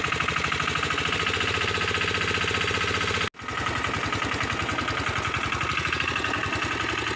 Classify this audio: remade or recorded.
recorded